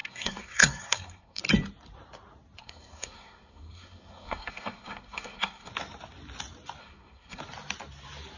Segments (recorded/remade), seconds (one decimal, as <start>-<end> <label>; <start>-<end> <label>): 0.0-1.4 remade; 1.4-2.6 recorded; 2.6-5.7 remade; 5.7-6.8 recorded; 6.8-7.4 remade; 7.4-8.4 recorded